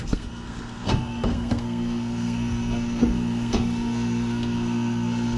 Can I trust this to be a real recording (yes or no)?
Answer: no